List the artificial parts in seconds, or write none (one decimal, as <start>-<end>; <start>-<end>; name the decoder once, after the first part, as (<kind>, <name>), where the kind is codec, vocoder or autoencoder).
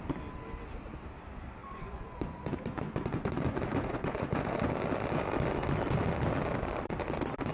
1.6-4.7 (vocoder, Vocos)